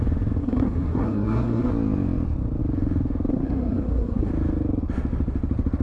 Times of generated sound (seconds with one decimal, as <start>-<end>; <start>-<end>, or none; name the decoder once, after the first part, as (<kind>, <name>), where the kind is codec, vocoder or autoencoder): 0.4-1.7 (codec, SNAC); 3.3-4.3